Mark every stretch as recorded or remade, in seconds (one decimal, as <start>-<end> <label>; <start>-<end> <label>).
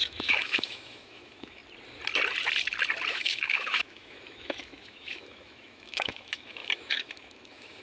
0.0-1.6 remade; 1.6-3.1 recorded; 3.1-7.8 remade